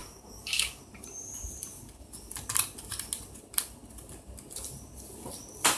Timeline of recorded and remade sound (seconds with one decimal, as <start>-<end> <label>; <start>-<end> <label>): 0.0-0.8 remade; 0.8-5.8 recorded